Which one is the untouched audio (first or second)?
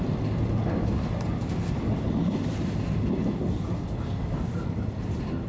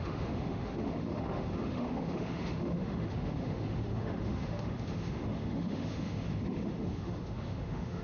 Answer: first